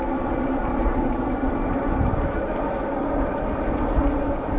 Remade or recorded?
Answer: recorded